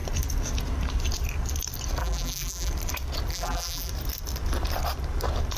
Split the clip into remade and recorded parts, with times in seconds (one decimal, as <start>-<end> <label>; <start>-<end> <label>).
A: 0.0-2.0 recorded; 2.0-2.7 remade; 2.7-3.3 recorded; 3.3-3.9 remade; 3.9-5.6 recorded